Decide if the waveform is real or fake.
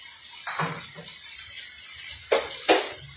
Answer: real